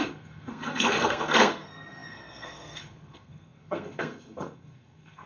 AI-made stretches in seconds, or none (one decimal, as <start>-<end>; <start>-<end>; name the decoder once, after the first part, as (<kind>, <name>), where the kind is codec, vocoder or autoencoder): 0.0-5.3 (codec, SNAC)

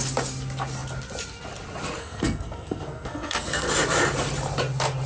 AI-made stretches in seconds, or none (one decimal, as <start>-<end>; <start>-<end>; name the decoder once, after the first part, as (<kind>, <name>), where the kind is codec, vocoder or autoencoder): 2.0-3.7 (codec, SNAC)

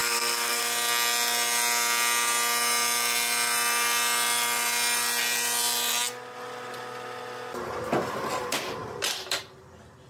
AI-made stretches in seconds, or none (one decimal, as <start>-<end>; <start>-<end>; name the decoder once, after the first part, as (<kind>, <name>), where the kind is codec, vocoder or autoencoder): 0.0-0.6 (codec, SNAC)

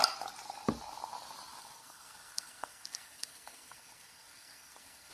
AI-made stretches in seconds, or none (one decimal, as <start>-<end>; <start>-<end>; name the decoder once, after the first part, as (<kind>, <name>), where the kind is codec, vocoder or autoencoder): 1.6-5.1 (codec, SNAC)

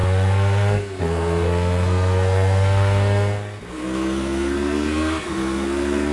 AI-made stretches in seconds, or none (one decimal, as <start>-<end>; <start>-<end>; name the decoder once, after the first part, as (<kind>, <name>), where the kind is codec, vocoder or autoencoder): 0.0-6.1 (codec, SNAC)

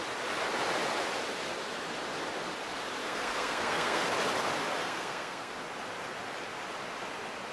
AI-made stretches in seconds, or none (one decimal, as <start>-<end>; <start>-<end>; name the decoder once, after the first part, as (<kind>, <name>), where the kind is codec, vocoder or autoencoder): 3.0-4.0 (codec, SNAC); 4.8-5.5